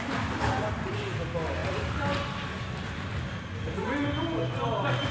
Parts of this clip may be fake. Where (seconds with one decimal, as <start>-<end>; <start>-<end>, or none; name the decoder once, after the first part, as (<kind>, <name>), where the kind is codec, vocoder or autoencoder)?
none